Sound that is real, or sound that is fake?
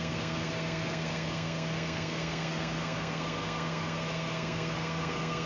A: fake